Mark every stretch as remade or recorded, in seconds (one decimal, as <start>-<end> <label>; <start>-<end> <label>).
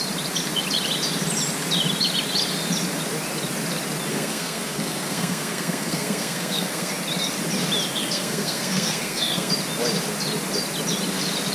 0.0-4.1 recorded; 4.1-6.9 remade; 6.9-8.0 recorded; 8.0-9.5 remade; 9.5-11.5 recorded